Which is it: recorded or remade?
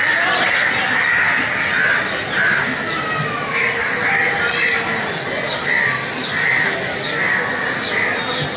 recorded